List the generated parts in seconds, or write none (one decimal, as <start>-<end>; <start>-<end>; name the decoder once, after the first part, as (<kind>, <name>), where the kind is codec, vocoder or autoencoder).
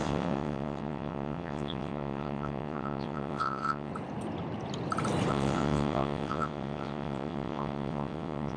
0.0-3.9 (vocoder, WaveNeXt); 5.3-8.6